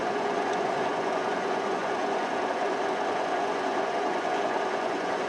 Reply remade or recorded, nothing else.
remade